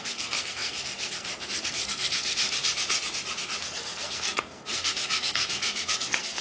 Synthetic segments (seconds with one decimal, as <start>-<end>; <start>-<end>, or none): 0.0-2.4; 3.6-6.4